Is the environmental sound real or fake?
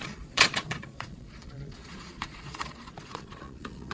fake